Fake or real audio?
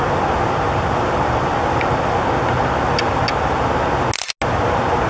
real